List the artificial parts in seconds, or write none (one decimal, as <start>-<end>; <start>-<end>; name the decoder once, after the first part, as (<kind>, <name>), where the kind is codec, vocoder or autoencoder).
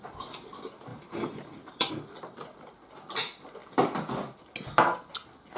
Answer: 0.9-1.9 (vocoder, BigVGAN v2)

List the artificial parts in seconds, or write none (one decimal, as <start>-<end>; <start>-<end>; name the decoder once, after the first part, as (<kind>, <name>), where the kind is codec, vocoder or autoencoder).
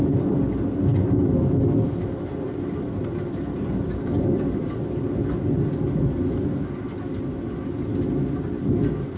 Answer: none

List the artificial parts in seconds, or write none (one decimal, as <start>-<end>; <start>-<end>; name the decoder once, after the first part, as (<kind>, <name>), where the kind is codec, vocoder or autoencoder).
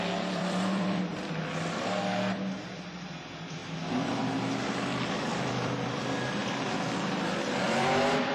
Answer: 0.0-1.1 (vocoder, BigVGAN v2); 3.2-3.6; 5.1-8.3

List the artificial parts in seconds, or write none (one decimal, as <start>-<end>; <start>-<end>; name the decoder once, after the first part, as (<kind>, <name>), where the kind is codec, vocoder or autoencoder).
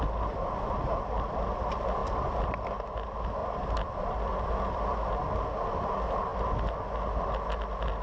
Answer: 2.0-2.8 (vocoder, BigVGAN v2); 3.4-5.1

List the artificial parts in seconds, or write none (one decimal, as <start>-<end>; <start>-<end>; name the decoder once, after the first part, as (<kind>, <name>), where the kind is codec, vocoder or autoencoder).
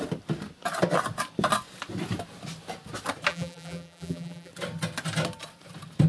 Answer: 3.3-4.5 (vocoder, BigVGAN v2)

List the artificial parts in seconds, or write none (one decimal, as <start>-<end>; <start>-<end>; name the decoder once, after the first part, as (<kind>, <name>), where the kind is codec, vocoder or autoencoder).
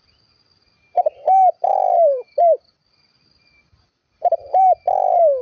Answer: 1.7-2.9 (vocoder, BigVGAN v2); 4.0-4.6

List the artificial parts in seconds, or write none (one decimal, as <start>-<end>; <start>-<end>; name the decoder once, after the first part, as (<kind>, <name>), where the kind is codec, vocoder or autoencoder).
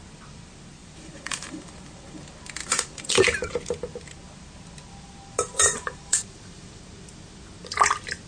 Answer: 0.8-2.2 (vocoder, BigVGAN v2); 2.6-3.5; 5.6-6.8